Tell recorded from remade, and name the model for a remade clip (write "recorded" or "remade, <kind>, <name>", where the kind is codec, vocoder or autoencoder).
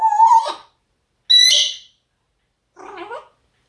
recorded